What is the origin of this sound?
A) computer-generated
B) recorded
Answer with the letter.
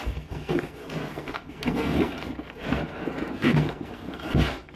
A